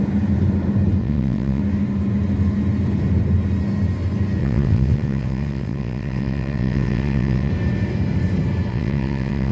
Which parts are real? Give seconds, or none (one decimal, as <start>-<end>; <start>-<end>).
0.0-1.0; 1.6-4.4; 7.5-8.7